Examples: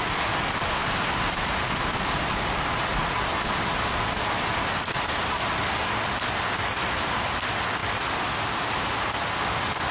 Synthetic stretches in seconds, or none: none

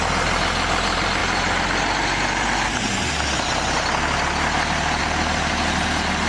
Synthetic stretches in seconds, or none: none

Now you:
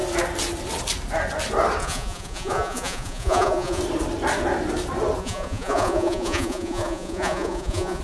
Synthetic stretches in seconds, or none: 1.8-3.8 (vocoder, Vocos); 5.2-8.0

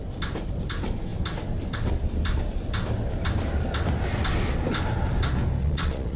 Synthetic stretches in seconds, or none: 5.6-6.2 (vocoder, Vocos)

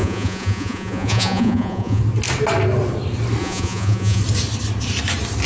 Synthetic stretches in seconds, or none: 0.0-2.0 (vocoder, Vocos); 3.4-4.2

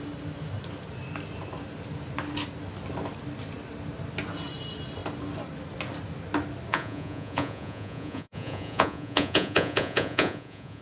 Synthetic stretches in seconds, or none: 6.7-10.8 (vocoder, Vocos)

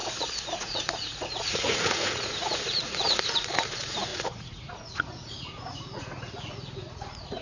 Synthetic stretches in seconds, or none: 0.0-7.4 (vocoder, Vocos)